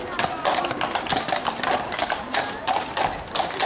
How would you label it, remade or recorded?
recorded